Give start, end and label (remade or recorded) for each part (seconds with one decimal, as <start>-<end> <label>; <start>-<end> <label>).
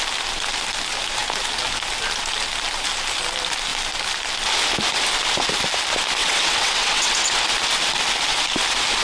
0.0-6.2 recorded; 6.2-7.3 remade; 7.3-9.0 recorded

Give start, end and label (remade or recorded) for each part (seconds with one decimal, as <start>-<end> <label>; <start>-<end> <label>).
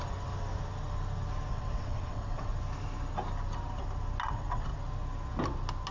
0.0-1.5 recorded; 1.5-2.5 remade; 2.5-4.3 recorded; 4.3-4.7 remade; 4.7-5.9 recorded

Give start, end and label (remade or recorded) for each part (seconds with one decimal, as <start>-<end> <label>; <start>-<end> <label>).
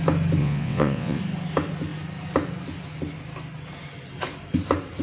0.0-0.4 recorded; 0.4-1.2 remade; 1.2-5.0 recorded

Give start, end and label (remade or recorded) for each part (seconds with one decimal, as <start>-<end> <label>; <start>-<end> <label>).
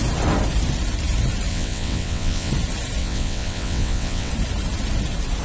0.0-1.5 recorded; 1.5-2.5 remade; 2.5-3.0 recorded; 3.0-4.3 remade; 4.3-5.4 recorded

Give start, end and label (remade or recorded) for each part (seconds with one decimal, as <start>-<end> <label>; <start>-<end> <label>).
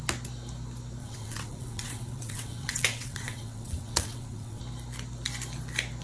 0.0-1.0 recorded; 1.0-4.6 remade; 4.6-6.0 recorded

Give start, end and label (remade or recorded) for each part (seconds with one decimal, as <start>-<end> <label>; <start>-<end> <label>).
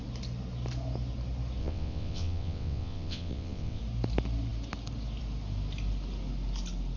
0.0-1.6 recorded; 1.6-3.8 remade; 3.8-7.0 recorded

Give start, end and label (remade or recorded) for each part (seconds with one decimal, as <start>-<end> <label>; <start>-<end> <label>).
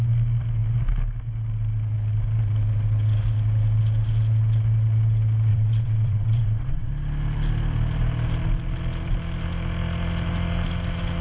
0.0-5.5 recorded; 5.5-6.9 remade; 6.9-11.2 recorded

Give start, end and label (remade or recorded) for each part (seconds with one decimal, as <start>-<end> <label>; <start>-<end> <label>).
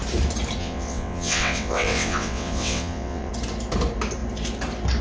0.0-0.6 recorded; 0.6-3.3 remade; 3.3-5.0 recorded